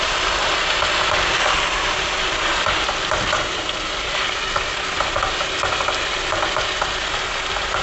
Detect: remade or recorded recorded